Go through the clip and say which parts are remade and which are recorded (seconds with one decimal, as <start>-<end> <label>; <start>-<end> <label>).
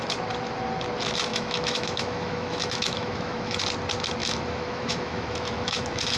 0.0-1.3 recorded; 1.3-3.6 remade; 3.6-4.2 recorded; 4.2-6.2 remade